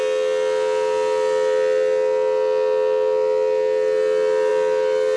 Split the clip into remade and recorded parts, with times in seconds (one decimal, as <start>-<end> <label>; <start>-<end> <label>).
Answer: 0.0-5.2 recorded